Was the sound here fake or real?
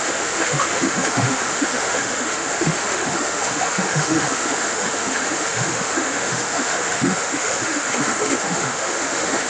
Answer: fake